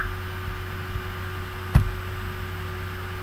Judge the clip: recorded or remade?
recorded